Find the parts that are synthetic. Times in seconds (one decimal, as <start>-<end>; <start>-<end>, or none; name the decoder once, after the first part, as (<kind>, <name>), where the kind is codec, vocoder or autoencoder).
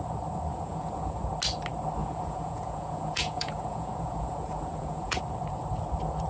0.5-1.2 (vocoder, Vocos); 2.0-5.2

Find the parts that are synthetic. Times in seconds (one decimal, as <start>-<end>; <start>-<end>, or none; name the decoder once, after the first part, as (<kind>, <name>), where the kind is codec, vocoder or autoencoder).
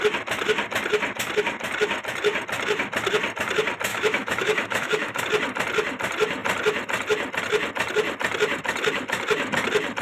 3.9-5.2 (autoencoder, DAC-VAE)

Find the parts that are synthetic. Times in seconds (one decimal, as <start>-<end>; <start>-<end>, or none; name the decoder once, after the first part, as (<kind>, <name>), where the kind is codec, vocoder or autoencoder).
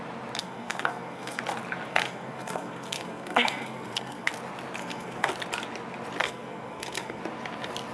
0.4-1.4 (codec, SNAC); 1.9-4.3; 4.8-5.3; 6.2-7.2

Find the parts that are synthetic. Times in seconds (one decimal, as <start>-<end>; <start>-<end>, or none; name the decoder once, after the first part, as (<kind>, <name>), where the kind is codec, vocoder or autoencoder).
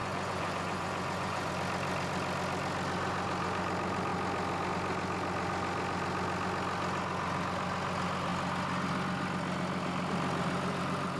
0.0-1.5 (vocoder, Vocos)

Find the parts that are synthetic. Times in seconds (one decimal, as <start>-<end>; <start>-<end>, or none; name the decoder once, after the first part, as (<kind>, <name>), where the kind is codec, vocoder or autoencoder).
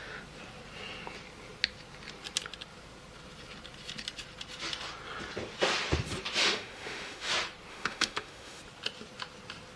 6.4-7.3 (autoencoder, DAC-VAE); 7.7-8.6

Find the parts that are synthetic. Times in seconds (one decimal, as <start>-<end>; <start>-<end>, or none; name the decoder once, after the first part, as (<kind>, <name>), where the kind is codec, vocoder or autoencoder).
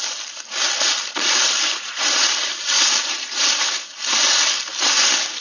none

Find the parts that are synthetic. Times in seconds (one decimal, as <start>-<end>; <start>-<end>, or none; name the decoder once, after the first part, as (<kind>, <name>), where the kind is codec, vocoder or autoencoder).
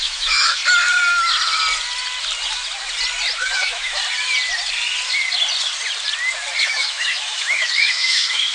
0.0-0.6 (autoencoder, DAC-VAE); 3.4-4.0; 6.6-8.5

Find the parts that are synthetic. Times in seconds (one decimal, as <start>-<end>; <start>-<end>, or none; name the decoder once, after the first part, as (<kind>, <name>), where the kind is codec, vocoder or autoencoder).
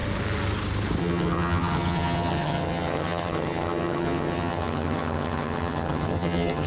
1.0-6.7 (vocoder, HiFi-GAN)